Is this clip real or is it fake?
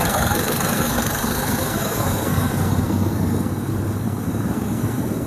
fake